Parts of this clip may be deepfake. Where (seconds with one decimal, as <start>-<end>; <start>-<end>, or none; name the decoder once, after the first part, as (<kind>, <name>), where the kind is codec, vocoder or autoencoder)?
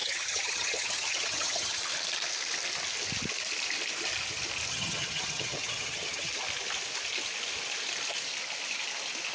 0.0-1.8 (vocoder, HiFi-GAN); 4.7-6.3